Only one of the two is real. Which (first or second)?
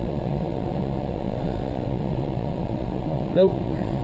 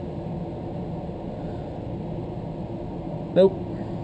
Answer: second